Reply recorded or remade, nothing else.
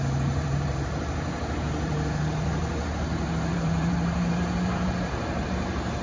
remade